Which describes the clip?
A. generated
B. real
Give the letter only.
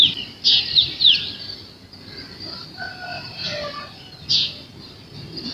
B